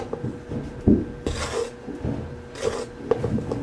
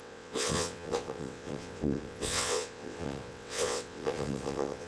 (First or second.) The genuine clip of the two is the first